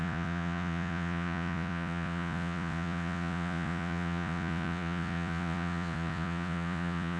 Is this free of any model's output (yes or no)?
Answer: no